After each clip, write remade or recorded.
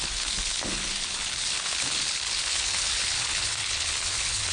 remade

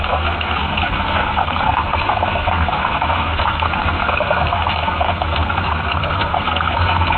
remade